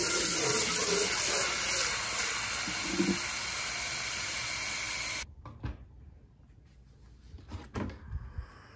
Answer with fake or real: real